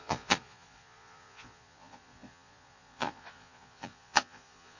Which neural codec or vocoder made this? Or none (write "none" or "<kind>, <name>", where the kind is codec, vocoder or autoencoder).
vocoder, Vocos